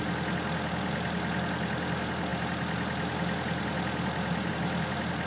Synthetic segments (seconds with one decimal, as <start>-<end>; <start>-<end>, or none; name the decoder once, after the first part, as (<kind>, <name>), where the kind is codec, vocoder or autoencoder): none